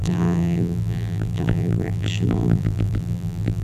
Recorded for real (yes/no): no